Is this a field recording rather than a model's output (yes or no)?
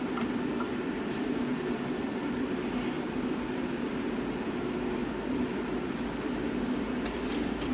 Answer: no